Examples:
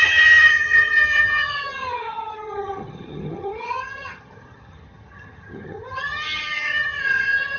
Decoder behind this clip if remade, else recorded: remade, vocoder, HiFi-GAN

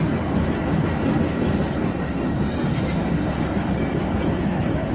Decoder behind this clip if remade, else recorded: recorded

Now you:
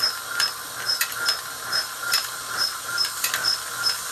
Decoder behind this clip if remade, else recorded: recorded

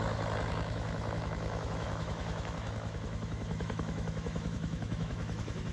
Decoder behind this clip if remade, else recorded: remade, autoencoder, DAC-VAE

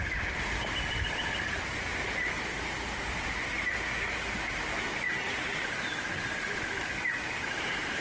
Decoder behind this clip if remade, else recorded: recorded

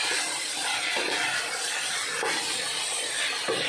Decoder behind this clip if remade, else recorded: recorded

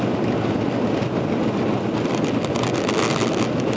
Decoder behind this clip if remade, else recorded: recorded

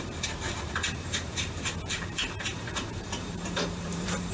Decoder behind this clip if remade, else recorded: remade, vocoder, BigVGAN v2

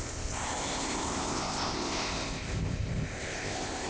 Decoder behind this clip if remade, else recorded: remade, codec, ZipCodec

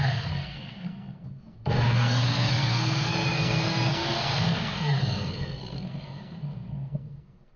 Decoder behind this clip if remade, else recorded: remade, codec, SNAC